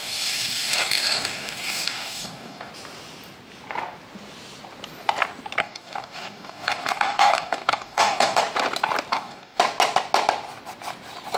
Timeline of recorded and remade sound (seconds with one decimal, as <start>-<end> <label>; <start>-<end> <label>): 0.0-2.7 remade; 2.7-5.6 recorded; 5.6-8.4 remade; 8.4-9.1 recorded; 9.1-9.6 remade; 9.6-11.4 recorded